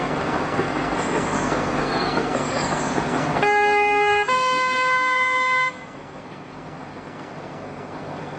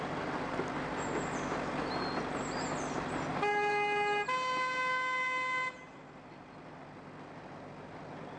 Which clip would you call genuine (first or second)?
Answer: second